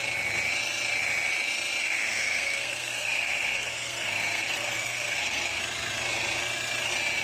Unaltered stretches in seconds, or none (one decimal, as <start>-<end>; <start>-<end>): 0.0-1.8; 5.6-7.2